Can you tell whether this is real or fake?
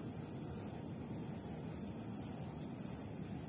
real